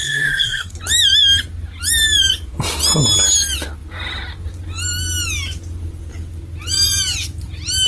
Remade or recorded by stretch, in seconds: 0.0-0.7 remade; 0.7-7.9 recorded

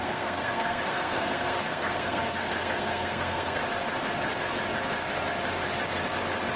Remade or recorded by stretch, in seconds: 0.0-3.6 remade; 3.6-6.6 recorded

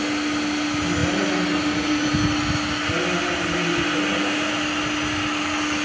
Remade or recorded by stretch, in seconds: 0.0-5.8 recorded

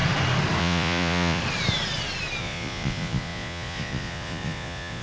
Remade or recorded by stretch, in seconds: 0.0-0.6 recorded; 0.6-1.4 remade; 1.4-2.4 recorded; 2.4-5.0 remade

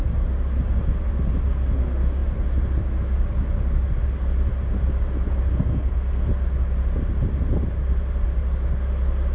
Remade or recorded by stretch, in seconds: 0.0-5.5 recorded; 5.5-6.3 remade; 6.3-9.3 recorded

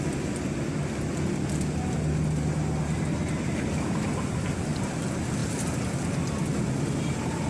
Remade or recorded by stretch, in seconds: 0.0-7.5 recorded

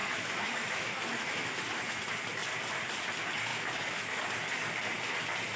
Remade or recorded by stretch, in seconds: 0.0-2.0 remade; 2.0-3.5 recorded; 3.5-4.2 remade; 4.2-5.6 recorded

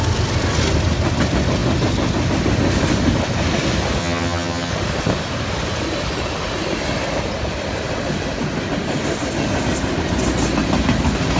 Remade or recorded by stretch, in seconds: 0.0-4.0 recorded; 4.0-4.7 remade; 4.7-11.4 recorded